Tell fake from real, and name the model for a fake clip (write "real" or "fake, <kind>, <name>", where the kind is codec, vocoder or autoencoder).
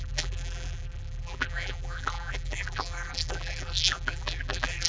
fake, vocoder, BigVGAN v2